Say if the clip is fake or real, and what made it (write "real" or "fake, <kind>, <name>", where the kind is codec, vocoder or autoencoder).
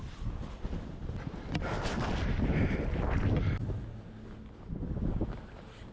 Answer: real